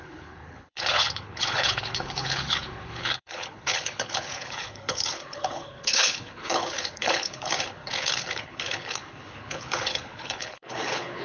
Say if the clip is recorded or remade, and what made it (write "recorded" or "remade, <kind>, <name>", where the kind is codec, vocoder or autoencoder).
remade, codec, HILCodec